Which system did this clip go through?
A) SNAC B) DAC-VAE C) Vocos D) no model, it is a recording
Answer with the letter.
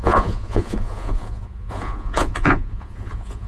C